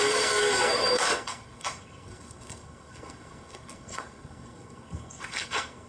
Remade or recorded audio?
remade